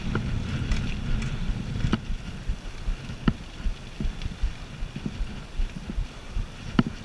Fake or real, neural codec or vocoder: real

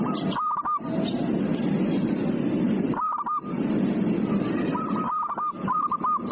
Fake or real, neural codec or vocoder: real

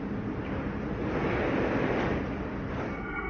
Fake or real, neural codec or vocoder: real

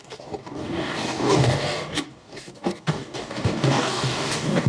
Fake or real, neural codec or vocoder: fake, codec, DAC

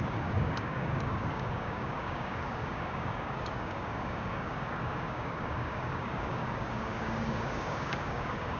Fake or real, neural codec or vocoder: fake, codec, DAC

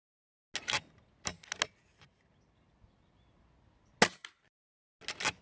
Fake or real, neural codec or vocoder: real